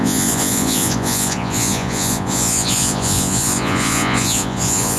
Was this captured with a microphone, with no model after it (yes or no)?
no